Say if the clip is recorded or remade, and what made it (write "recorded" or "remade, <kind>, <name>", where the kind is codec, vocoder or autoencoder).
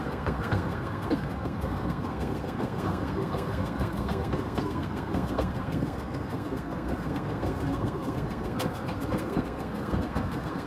remade, codec, SNAC